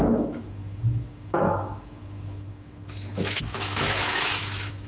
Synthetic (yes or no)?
yes